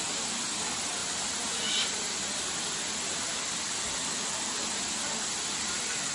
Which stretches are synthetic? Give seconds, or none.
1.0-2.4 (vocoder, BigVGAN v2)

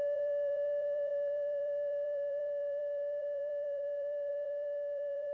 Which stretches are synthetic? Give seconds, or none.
0.0-5.3 (vocoder, BigVGAN v2)

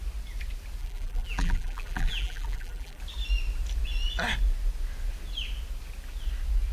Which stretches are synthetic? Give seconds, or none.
0.8-3.0 (vocoder, BigVGAN v2)

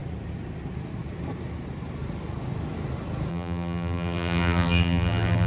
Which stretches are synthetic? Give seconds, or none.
3.3-5.5 (vocoder, BigVGAN v2)

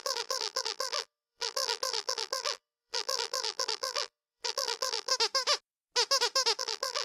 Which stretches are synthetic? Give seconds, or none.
0.0-5.1 (vocoder, BigVGAN v2); 6.6-7.0